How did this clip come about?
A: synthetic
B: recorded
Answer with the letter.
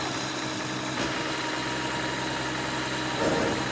B